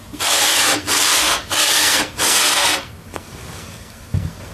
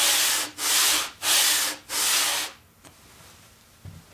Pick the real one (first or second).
second